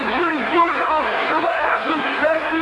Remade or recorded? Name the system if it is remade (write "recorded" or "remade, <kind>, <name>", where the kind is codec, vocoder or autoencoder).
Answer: remade, codec, SNAC